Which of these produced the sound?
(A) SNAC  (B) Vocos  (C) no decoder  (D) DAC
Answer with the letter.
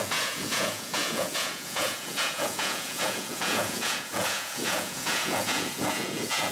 B